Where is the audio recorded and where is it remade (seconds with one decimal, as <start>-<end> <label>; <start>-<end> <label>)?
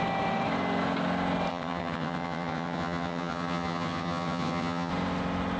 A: 0.0-1.5 recorded; 1.5-4.9 remade; 4.9-5.6 recorded